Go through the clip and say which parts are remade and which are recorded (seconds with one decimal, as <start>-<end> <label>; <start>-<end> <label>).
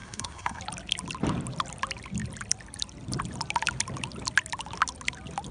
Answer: 0.0-0.6 remade; 0.6-5.5 recorded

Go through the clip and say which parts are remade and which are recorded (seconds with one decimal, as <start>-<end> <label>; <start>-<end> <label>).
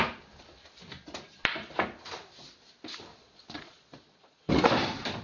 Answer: 0.0-3.1 recorded; 3.1-4.5 remade; 4.5-5.2 recorded